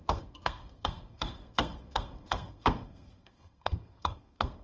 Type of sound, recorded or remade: remade